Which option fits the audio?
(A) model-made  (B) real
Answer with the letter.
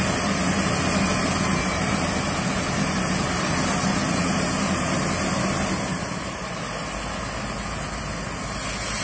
B